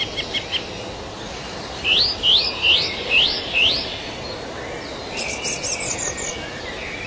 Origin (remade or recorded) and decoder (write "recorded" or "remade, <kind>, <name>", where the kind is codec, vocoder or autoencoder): recorded